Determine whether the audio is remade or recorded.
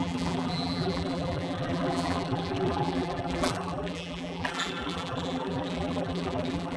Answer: remade